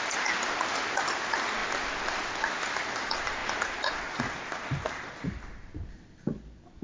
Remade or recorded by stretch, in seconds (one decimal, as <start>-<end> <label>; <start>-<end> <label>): 0.0-6.8 recorded